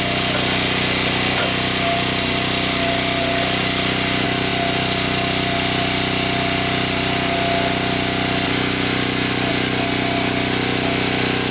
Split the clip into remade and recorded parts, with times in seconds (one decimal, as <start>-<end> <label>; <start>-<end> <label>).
0.0-11.5 recorded